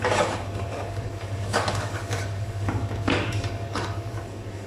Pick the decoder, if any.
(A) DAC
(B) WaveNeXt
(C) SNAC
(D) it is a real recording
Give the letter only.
A